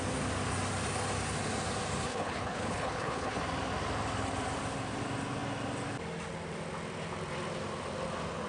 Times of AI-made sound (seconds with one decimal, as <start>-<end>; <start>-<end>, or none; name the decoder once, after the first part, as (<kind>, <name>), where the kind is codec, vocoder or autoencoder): 2.1-3.4 (codec, HILCodec)